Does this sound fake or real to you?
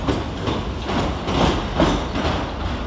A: real